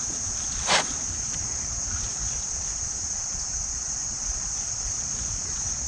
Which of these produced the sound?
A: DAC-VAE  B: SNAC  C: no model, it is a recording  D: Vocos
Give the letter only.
D